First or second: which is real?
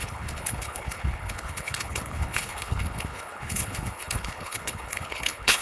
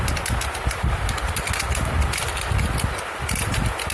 second